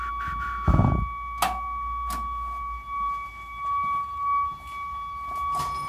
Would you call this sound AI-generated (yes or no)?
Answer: no